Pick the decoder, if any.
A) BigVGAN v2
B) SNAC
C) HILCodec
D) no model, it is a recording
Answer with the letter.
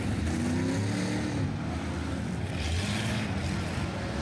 D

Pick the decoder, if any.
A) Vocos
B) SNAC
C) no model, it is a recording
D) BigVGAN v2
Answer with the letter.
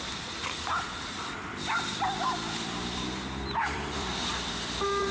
D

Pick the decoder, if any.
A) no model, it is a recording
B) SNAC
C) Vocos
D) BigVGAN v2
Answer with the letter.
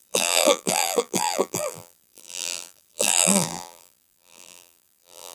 D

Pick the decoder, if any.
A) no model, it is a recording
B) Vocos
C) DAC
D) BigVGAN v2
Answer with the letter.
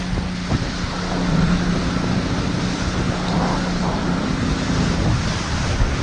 A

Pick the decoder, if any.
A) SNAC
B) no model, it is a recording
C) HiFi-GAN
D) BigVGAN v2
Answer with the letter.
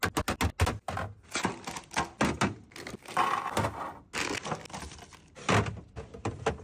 B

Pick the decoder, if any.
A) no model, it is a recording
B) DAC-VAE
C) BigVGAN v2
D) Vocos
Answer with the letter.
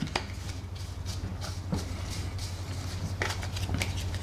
A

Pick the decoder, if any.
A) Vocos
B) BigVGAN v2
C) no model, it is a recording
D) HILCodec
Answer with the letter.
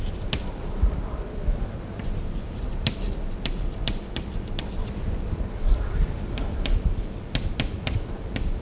B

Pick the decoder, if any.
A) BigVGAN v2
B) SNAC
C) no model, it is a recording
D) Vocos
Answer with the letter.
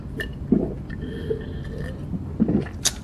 C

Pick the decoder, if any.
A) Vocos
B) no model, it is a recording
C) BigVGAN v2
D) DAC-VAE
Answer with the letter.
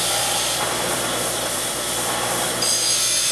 C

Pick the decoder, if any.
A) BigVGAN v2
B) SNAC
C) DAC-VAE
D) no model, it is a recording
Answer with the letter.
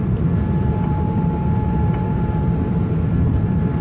A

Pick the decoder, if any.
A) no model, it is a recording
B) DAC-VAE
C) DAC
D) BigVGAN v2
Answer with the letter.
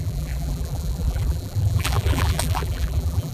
D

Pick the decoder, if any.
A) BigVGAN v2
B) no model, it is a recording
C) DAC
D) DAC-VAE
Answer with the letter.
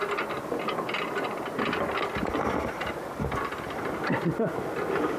B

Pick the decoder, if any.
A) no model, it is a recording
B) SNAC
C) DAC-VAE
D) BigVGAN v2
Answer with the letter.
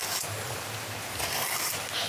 A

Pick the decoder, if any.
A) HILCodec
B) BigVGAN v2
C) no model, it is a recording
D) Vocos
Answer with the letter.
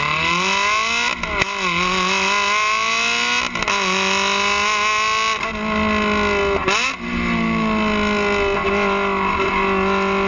C